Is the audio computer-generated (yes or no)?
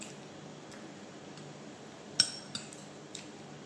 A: no